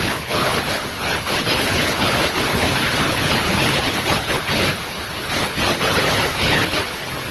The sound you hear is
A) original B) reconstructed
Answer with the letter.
B